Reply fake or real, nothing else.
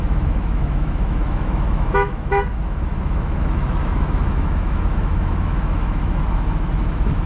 fake